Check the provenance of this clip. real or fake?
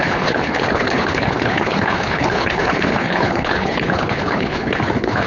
fake